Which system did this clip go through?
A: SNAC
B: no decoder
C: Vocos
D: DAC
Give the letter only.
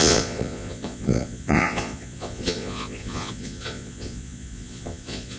C